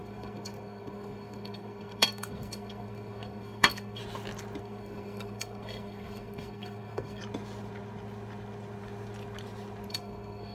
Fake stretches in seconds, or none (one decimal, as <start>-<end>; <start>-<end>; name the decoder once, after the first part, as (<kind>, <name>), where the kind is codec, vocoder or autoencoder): 0.0-4.0 (codec, SNAC); 4.6-7.2; 9.9-10.5